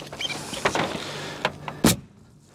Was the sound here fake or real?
real